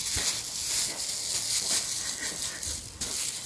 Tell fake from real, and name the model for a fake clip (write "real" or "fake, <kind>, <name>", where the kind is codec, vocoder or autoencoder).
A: real